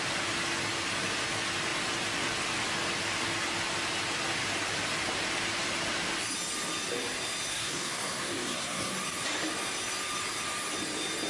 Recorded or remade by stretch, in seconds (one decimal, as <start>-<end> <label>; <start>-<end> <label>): 0.0-7.5 recorded; 7.5-8.9 remade; 8.9-11.3 recorded